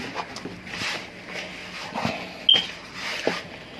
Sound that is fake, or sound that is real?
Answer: real